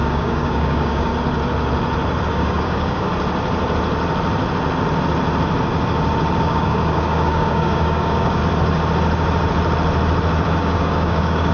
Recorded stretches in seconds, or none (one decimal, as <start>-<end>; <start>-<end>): 1.1-2.3; 3.1-6.4; 8.4-10.6